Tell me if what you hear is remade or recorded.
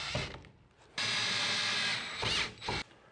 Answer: recorded